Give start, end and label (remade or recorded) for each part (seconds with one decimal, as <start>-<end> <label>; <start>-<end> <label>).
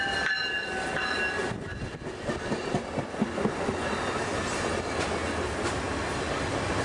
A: 0.0-6.8 recorded